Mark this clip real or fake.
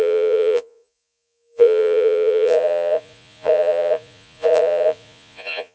fake